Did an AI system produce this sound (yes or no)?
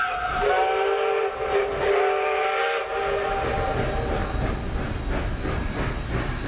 no